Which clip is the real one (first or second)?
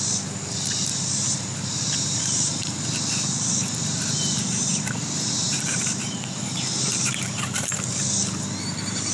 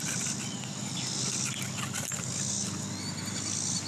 second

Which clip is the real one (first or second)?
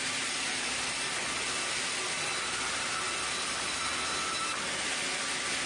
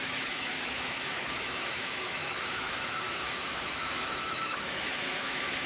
first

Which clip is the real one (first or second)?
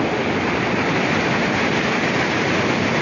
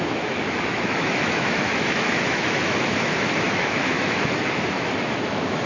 first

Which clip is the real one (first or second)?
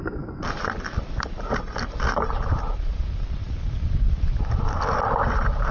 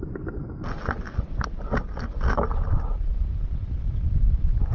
second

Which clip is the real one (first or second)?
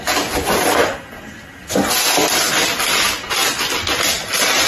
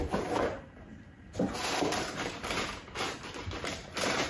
first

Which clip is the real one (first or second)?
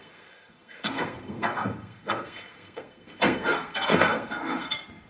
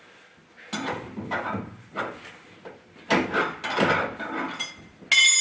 second